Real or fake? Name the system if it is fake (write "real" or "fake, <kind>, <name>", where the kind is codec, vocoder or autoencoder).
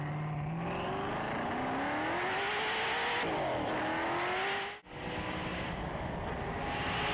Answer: real